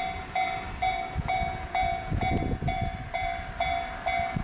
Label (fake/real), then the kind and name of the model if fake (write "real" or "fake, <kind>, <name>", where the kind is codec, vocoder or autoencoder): real